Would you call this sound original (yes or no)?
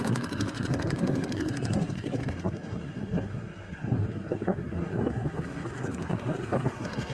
no